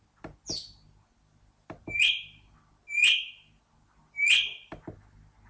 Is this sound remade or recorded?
recorded